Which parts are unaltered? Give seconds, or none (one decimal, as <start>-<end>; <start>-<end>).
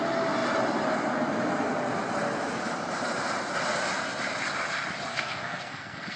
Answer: 0.0-5.1